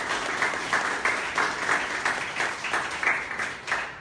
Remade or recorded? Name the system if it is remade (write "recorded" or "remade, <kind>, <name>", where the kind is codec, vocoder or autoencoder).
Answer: recorded